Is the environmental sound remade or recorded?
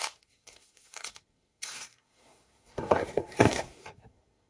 remade